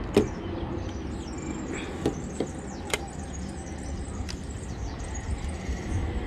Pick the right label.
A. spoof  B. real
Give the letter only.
B